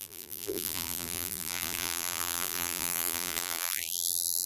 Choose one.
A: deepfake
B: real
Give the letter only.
A